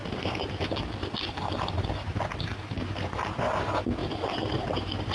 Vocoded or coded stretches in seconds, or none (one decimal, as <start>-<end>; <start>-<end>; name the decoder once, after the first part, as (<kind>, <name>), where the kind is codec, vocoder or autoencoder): 0.0-2.2 (vocoder, BigVGAN v2); 4.0-5.1